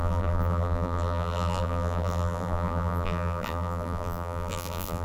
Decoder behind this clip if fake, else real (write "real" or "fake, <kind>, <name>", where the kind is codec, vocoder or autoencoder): fake, vocoder, BigVGAN v2